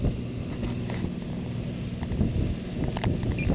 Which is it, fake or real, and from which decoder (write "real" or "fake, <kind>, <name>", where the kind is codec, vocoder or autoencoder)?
real